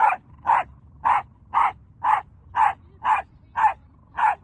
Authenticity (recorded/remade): recorded